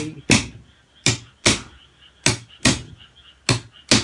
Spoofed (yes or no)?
no